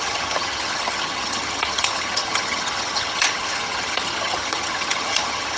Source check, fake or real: fake